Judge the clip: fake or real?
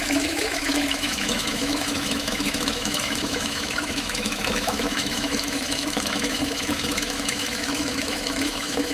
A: fake